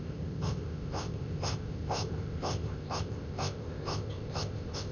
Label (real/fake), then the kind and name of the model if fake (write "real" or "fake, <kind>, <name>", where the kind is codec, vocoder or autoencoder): fake, codec, ZipCodec